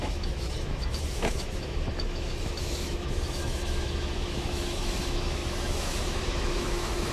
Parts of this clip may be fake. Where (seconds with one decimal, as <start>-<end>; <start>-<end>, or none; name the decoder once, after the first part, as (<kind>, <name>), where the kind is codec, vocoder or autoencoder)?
0.0-7.1 (autoencoder, DAC-VAE)